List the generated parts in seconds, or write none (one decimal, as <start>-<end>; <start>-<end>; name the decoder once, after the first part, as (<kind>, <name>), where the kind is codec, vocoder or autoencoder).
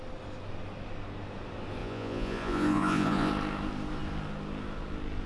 1.8-3.3 (vocoder, Vocos)